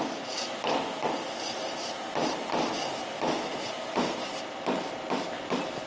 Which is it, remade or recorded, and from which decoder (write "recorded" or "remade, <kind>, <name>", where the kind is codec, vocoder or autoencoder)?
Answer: recorded